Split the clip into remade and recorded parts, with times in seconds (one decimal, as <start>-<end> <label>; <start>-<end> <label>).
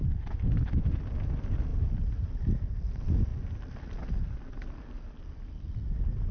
0.0-6.3 recorded